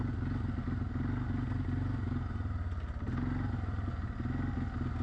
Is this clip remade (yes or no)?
no